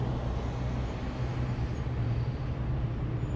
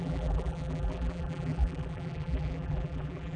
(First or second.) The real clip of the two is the first